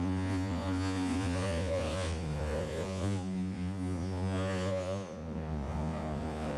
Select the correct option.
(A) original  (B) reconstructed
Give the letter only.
B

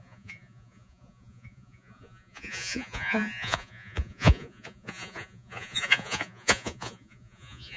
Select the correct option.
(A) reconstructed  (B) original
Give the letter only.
A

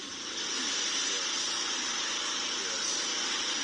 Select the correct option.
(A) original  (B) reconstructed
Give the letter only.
A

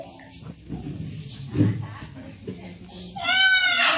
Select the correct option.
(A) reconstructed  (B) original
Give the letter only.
B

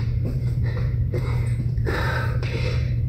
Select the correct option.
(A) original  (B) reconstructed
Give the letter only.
B